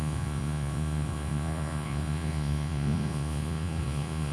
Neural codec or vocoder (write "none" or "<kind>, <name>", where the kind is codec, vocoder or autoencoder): vocoder, Vocos